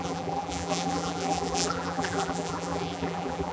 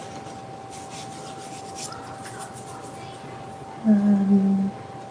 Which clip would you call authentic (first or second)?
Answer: second